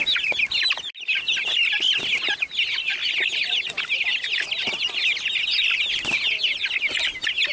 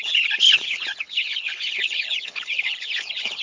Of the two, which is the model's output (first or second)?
second